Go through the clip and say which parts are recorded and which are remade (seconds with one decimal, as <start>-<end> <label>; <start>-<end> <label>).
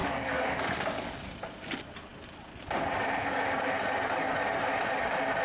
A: 0.0-0.8 remade; 0.8-5.4 recorded